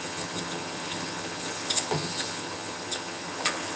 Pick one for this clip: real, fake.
fake